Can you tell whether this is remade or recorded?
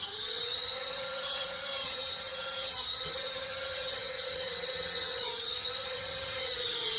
remade